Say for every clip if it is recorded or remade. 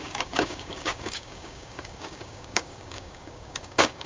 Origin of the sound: remade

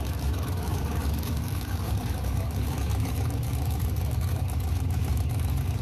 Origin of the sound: remade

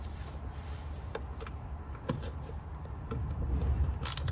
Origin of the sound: recorded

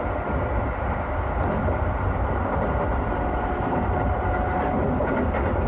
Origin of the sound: recorded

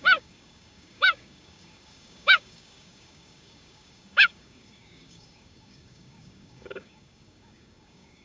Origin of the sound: remade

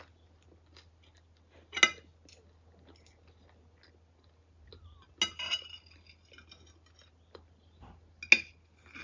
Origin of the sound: recorded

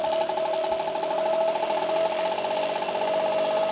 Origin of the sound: recorded